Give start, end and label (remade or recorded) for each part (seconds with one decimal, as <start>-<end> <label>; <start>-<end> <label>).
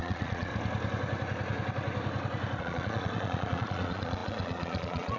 0.0-0.5 remade; 0.5-2.6 recorded; 2.6-5.2 remade